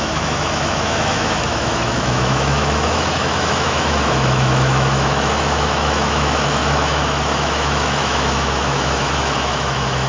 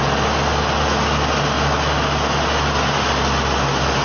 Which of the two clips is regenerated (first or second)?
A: first